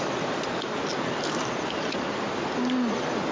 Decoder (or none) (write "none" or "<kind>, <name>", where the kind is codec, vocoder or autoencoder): none